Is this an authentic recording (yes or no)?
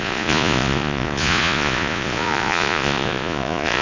no